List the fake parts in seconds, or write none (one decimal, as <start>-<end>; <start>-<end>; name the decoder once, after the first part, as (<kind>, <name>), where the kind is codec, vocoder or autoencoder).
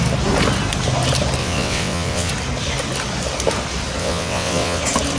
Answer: 1.4-2.3 (vocoder, WaveNeXt); 4.0-4.8